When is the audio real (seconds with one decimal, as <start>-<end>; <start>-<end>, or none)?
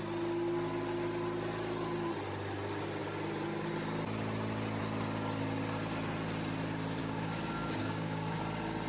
0.0-7.0; 8.4-8.9